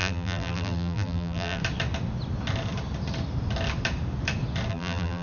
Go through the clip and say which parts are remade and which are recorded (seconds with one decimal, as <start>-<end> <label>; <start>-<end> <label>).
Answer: 0.0-1.6 remade; 1.6-4.7 recorded; 4.7-5.2 remade